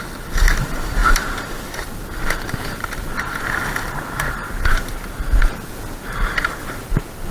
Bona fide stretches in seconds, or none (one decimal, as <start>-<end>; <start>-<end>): 0.0-7.3